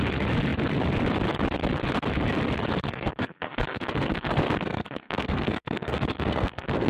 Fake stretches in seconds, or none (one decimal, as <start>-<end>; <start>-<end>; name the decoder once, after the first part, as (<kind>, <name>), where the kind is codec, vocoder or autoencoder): 3.1-6.9 (codec, SNAC)